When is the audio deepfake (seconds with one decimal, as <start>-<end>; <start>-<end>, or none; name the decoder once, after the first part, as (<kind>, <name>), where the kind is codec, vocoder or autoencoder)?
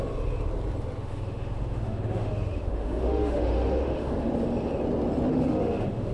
1.0-4.3 (autoencoder, DAC-VAE); 5.3-6.1